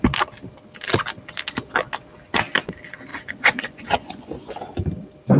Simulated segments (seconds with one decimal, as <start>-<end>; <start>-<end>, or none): 3.1-4.5